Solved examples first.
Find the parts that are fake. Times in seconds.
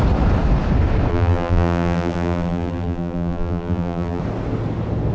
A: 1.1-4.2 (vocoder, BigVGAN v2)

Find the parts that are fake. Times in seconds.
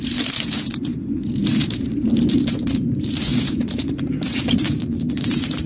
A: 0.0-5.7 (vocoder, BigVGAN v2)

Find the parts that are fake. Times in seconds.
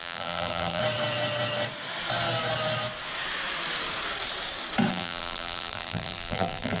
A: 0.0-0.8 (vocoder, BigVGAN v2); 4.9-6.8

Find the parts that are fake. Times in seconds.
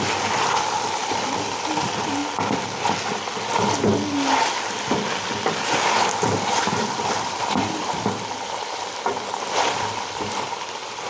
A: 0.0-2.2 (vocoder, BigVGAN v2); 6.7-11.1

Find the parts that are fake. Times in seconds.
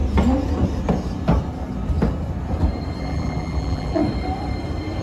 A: 3.0-4.0 (vocoder, BigVGAN v2)